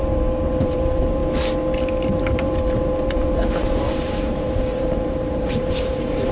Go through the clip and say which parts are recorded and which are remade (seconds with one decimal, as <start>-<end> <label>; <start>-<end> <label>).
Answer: 0.0-1.2 remade; 1.2-2.2 recorded; 2.2-6.3 remade